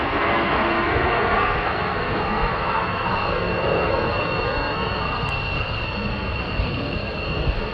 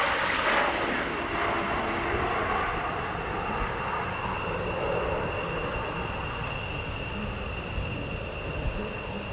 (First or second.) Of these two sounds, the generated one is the first